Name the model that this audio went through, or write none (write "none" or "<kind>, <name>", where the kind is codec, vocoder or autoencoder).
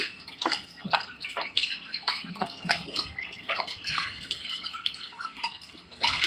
codec, SNAC